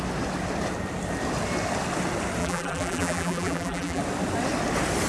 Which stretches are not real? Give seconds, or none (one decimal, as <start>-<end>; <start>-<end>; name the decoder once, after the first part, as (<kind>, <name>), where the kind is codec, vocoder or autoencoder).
2.4-4.0 (vocoder, BigVGAN v2)